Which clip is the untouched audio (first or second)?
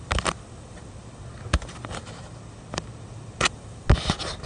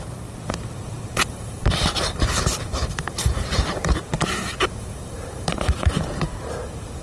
first